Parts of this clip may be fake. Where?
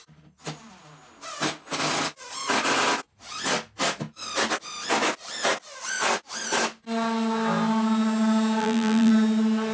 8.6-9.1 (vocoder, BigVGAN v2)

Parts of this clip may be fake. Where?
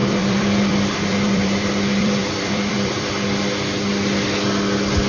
0.0-3.1 (vocoder, BigVGAN v2)